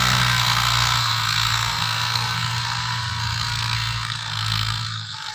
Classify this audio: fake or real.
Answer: fake